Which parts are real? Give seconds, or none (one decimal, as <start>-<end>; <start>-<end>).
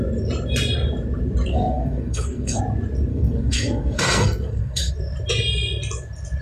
0.0-1.5; 2.6-3.1; 4.9-6.4